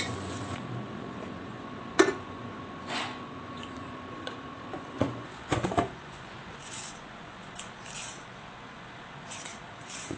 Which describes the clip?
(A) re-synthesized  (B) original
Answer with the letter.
A